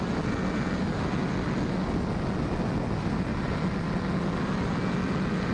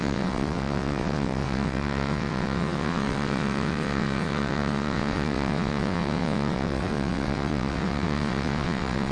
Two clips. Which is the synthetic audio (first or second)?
second